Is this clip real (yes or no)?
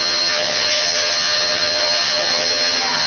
no